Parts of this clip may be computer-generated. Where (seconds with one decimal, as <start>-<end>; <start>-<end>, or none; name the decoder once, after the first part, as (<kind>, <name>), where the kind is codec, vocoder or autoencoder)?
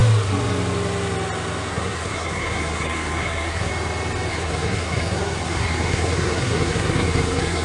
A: 1.7-3.7 (codec, SNAC); 4.3-7.6